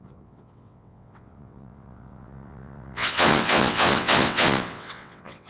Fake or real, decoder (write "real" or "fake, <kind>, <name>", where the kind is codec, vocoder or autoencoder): fake, vocoder, WaveNeXt